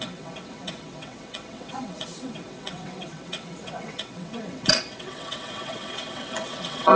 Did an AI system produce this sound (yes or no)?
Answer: yes